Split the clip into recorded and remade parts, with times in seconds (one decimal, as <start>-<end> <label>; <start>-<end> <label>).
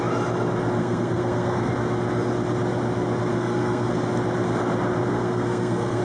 0.0-0.8 recorded; 0.8-1.7 remade; 1.7-3.3 recorded; 3.3-3.9 remade; 3.9-5.1 recorded; 5.1-6.0 remade